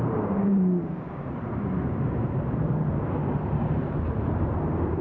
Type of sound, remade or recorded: remade